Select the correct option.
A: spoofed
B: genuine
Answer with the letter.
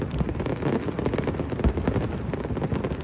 B